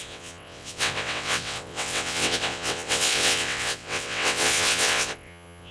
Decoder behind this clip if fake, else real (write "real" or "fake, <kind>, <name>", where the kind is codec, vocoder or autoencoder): fake, vocoder, WaveNeXt